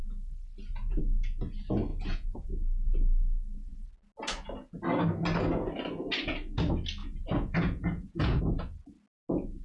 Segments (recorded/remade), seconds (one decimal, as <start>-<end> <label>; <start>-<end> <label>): 0.0-1.9 recorded; 1.9-2.5 remade; 2.5-7.0 recorded; 7.0-8.4 remade; 8.4-9.6 recorded